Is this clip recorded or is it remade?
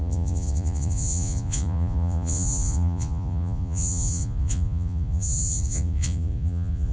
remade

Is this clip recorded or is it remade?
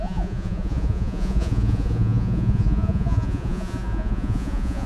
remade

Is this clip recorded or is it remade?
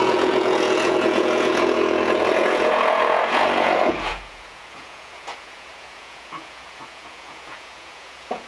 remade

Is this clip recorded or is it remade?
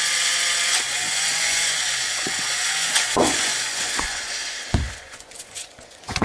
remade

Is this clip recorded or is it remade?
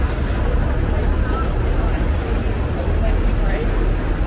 recorded